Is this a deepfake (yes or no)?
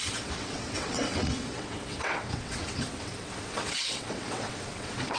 yes